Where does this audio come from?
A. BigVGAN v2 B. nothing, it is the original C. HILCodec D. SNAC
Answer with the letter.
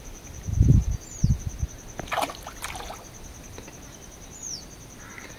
B